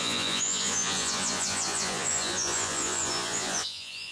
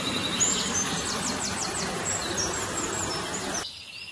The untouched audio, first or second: second